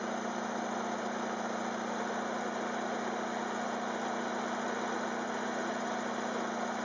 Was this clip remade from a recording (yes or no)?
no